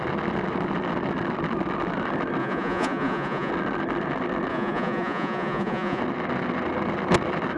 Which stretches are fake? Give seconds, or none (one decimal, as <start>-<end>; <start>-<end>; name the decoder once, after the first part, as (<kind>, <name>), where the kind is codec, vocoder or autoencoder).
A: 2.4-3.5 (vocoder, Vocos); 4.5-6.0

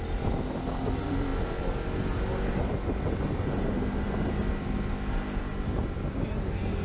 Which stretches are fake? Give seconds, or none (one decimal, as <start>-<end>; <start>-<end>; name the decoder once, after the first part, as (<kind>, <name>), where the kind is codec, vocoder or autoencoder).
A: none

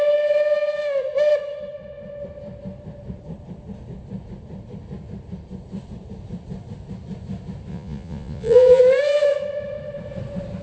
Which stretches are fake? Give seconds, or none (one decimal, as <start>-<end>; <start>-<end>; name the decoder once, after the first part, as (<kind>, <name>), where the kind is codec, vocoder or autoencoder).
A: 7.7-8.8 (vocoder, Vocos)

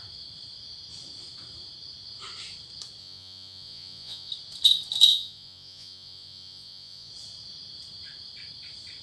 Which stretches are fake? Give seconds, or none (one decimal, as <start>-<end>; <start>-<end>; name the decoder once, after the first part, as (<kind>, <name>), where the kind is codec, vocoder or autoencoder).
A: 3.0-4.3 (vocoder, Vocos); 5.1-7.1